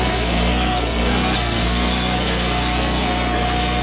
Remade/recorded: remade